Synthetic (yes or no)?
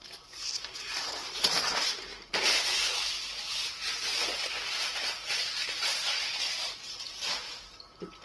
no